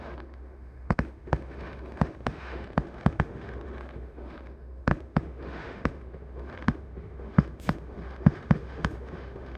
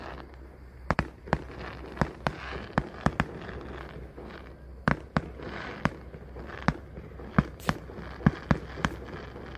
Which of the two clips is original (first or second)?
second